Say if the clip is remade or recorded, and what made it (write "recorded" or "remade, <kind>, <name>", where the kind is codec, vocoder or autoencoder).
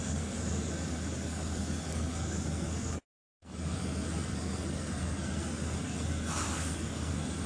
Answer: remade, codec, SNAC